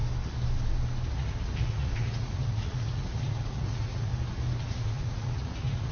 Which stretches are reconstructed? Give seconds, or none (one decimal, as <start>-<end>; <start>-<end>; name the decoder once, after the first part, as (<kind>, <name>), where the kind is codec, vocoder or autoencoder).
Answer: 1.1-4.1 (vocoder, Vocos); 4.6-5.9